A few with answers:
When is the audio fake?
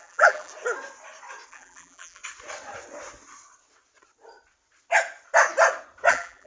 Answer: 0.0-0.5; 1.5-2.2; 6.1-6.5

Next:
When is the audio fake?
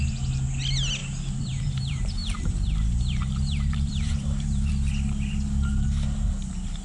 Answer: 1.0-4.7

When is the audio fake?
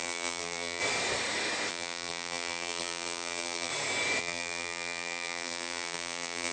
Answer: 0.0-0.8; 1.7-3.7; 4.2-6.5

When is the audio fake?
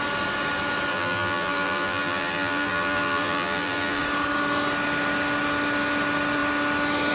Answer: 0.9-4.0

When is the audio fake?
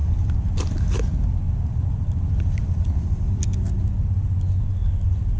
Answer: 0.0-0.7; 1.2-3.5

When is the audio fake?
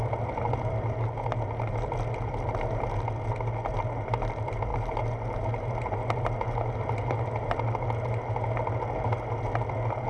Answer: none